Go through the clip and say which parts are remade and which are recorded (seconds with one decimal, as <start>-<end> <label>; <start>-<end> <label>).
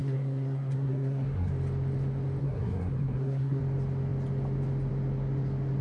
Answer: 0.0-1.5 remade; 1.5-2.4 recorded; 2.4-3.6 remade; 3.6-5.8 recorded